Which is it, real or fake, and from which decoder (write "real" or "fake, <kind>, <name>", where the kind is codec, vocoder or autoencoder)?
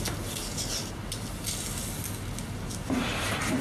real